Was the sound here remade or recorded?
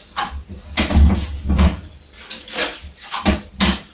recorded